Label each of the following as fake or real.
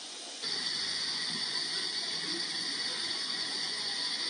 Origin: fake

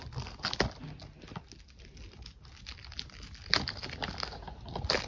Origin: real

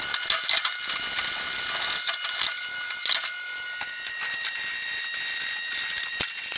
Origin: real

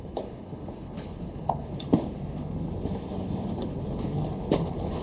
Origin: fake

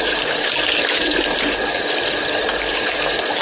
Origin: fake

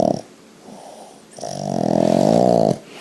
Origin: real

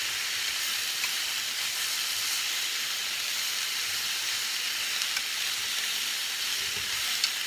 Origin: real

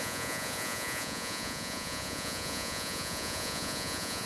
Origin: fake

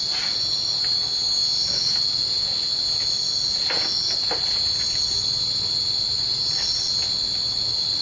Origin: real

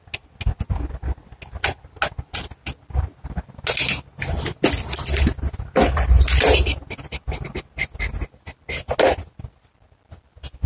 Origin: real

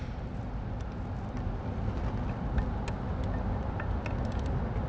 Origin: real